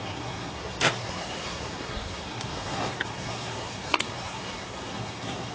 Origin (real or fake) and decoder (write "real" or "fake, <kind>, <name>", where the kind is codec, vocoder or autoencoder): fake, codec, SNAC